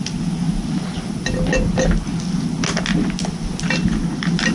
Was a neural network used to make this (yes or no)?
no